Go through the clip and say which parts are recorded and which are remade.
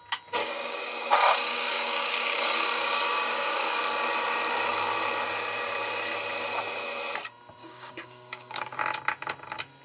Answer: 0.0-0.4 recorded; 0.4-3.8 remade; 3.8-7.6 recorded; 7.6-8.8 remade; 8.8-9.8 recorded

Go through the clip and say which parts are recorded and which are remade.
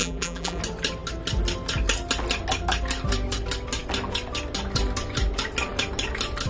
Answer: 0.0-0.6 remade; 0.6-6.5 recorded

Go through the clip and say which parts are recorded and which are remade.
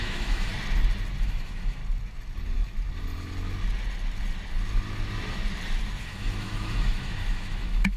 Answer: 0.0-0.5 remade; 0.5-1.2 recorded; 1.2-1.8 remade; 1.8-6.0 recorded; 6.0-8.0 remade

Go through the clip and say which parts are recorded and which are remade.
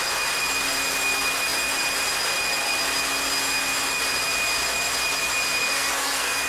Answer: 0.0-5.6 recorded; 5.6-6.5 remade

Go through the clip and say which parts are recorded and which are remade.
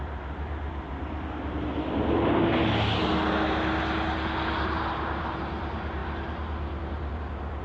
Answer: 0.0-7.6 recorded